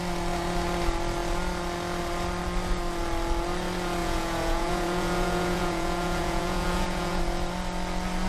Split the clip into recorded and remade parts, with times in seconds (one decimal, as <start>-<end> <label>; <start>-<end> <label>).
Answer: 0.0-4.0 recorded; 4.0-7.2 remade; 7.2-8.3 recorded

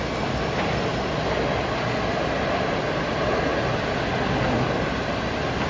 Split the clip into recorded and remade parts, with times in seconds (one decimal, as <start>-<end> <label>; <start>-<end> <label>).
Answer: 0.0-5.7 recorded

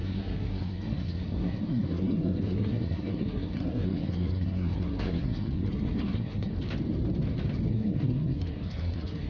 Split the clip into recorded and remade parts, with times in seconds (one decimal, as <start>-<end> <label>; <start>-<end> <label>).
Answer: 0.0-6.5 remade; 6.5-7.7 recorded; 7.7-9.3 remade

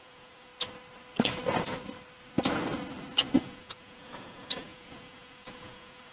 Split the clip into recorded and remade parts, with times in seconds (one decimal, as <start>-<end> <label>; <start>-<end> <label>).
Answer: 0.0-0.5 remade; 0.5-3.4 recorded; 3.4-6.1 remade

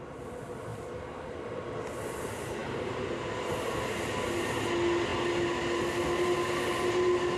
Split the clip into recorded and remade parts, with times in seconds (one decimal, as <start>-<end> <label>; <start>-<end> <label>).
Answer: 0.0-7.4 recorded